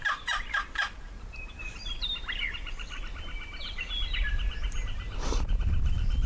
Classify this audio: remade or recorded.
recorded